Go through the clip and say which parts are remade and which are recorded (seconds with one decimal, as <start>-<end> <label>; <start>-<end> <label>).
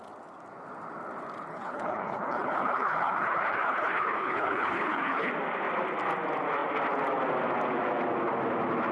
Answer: 0.0-1.5 recorded; 1.5-5.3 remade; 5.3-8.9 recorded